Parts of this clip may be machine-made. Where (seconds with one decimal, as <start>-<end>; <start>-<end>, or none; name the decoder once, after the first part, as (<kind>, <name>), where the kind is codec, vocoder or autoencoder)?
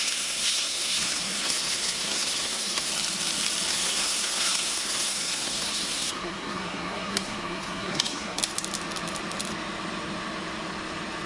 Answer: 0.0-2.9 (codec, SNAC); 3.7-8.4